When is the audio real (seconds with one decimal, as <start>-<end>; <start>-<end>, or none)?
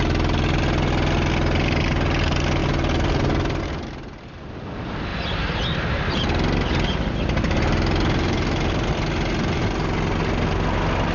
0.0-11.1